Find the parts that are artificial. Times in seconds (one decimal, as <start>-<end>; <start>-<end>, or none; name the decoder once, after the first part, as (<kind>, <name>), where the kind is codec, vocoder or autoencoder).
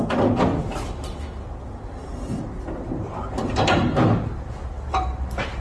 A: none